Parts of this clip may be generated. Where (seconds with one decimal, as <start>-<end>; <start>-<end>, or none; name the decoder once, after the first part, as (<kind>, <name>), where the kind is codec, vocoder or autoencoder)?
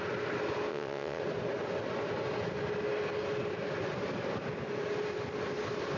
0.7-1.2 (vocoder, WaveNeXt)